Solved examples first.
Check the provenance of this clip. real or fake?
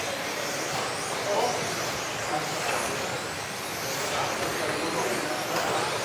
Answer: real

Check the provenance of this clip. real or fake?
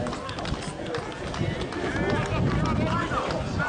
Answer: real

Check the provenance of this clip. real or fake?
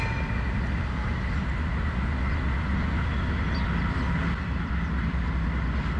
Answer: real